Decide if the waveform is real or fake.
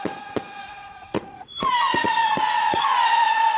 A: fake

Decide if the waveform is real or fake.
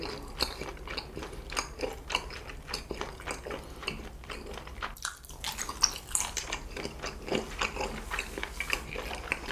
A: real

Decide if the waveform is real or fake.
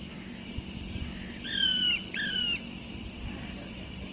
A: real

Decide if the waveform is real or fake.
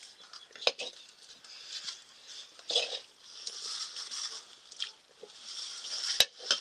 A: real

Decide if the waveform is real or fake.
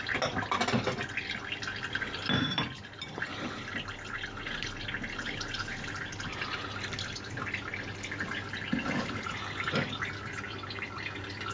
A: real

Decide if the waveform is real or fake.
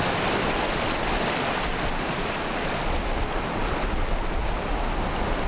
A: real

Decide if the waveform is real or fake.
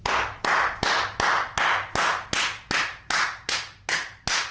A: real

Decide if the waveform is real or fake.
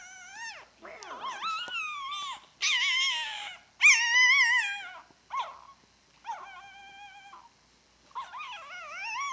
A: real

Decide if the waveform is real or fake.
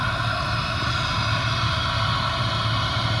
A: real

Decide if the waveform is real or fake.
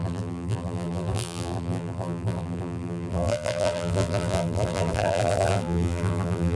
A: fake